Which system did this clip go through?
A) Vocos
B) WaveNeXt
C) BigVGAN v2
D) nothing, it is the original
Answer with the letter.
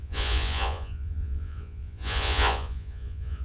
A